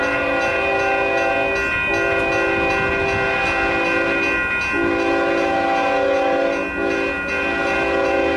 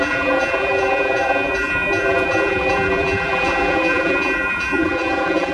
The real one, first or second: first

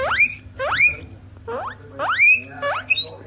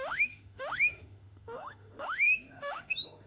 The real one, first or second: first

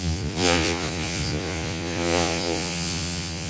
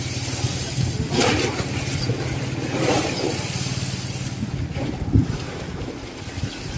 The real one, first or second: second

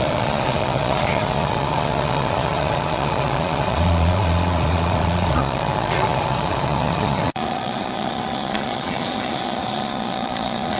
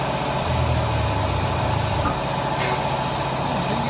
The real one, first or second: second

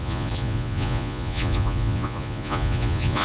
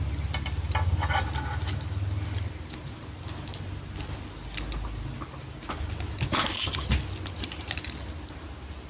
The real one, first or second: second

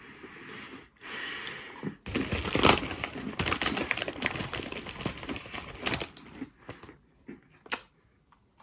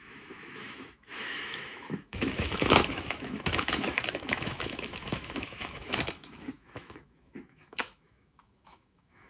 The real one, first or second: first